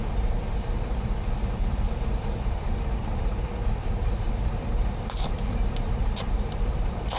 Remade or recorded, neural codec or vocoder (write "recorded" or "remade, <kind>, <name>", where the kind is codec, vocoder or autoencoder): remade, vocoder, BigVGAN v2